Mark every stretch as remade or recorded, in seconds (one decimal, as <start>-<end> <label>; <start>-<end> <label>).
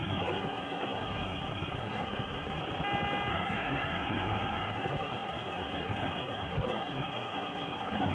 0.0-2.6 remade; 2.6-3.3 recorded; 3.3-8.1 remade